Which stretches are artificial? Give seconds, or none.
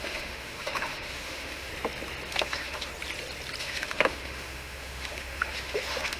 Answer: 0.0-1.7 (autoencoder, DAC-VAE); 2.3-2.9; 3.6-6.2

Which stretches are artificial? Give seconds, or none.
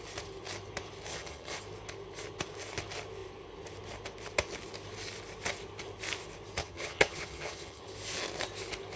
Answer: 1.1-1.6 (vocoder, HiFi-GAN); 6.6-7.8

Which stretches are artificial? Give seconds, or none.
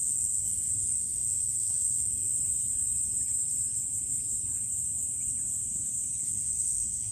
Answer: 0.0-2.3 (codec, SNAC); 6.2-7.1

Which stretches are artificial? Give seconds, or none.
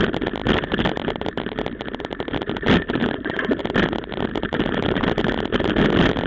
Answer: 3.0-3.6 (vocoder, BigVGAN v2); 4.3-5.2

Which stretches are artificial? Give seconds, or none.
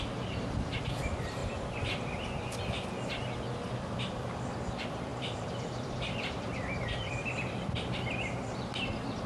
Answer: 0.0-1.4 (vocoder, BigVGAN v2); 3.7-9.3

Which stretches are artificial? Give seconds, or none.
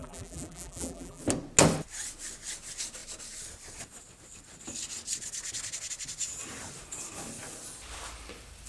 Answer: 0.0-1.2 (vocoder, BigVGAN v2)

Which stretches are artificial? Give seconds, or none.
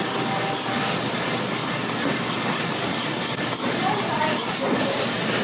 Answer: 1.6-3.5 (vocoder, BigVGAN v2)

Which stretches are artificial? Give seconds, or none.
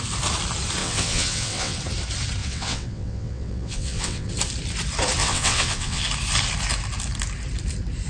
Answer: 0.8-1.8 (vocoder, WaveNeXt); 2.4-4.3; 5.2-6.0